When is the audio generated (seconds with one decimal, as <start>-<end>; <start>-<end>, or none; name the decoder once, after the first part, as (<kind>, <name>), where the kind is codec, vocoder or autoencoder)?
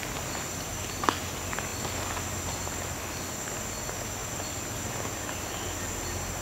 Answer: none